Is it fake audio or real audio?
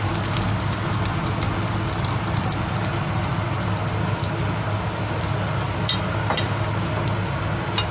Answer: real